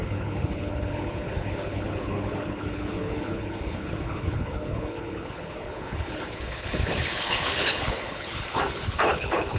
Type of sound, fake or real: fake